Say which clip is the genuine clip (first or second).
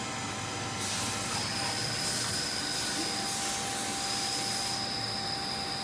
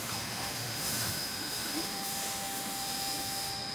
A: first